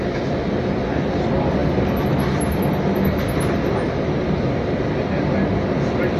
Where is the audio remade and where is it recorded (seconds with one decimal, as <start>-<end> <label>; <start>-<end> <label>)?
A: 0.0-6.2 recorded